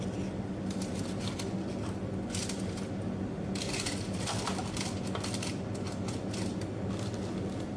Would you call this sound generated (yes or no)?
no